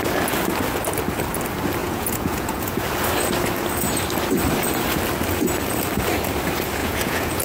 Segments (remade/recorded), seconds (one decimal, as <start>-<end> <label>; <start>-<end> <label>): 0.0-1.8 recorded; 1.8-2.8 remade; 2.8-6.8 recorded; 6.8-7.4 remade